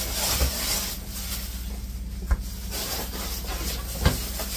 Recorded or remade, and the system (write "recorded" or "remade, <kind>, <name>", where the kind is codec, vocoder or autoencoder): recorded